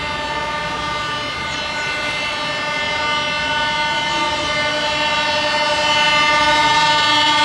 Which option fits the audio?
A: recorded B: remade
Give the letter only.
A